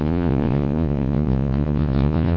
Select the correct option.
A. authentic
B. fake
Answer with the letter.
B